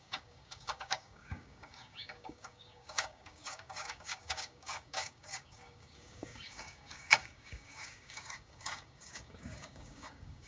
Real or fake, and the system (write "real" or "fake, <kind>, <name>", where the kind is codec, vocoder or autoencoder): fake, codec, DAC